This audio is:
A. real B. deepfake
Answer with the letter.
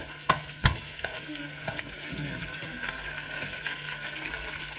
B